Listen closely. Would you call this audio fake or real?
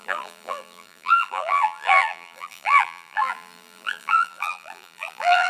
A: fake